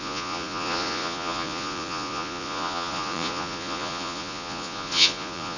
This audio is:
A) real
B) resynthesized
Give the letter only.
B